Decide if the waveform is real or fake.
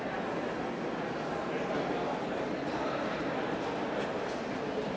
real